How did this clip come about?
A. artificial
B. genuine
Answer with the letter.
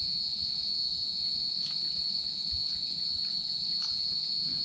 A